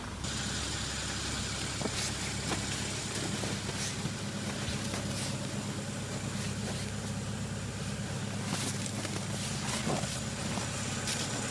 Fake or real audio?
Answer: real